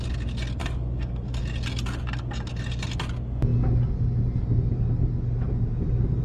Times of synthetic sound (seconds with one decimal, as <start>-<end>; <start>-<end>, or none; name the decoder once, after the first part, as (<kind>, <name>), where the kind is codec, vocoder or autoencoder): 0.6-1.4 (codec, DAC)

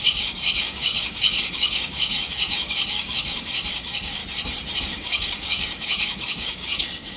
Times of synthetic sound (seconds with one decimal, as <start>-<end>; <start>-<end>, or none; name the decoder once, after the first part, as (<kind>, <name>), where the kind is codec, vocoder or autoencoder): 0.0-4.2 (codec, DAC); 4.8-7.2

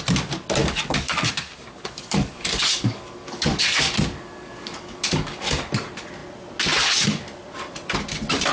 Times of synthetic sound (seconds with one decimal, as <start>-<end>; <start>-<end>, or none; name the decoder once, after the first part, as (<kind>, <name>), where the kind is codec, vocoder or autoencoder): 0.6-5.7 (codec, DAC)

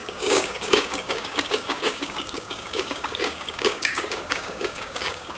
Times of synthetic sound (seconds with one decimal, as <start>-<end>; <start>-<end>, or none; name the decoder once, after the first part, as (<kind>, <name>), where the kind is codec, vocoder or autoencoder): 0.0-5.4 (codec, DAC)